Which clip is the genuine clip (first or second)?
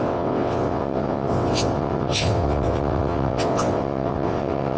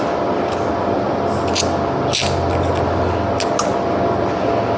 second